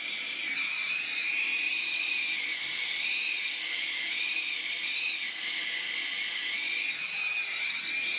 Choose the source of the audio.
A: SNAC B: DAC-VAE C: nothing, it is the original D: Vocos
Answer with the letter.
C